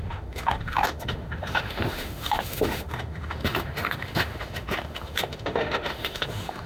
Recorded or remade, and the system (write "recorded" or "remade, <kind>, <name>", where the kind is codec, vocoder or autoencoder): remade, autoencoder, DAC-VAE